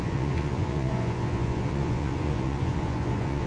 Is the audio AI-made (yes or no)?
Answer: yes